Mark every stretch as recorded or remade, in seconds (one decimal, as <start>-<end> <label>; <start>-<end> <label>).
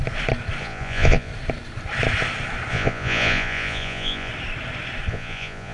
0.0-0.6 recorded; 0.6-1.3 remade; 1.3-2.7 recorded; 2.7-4.3 remade; 4.3-5.1 recorded; 5.1-5.7 remade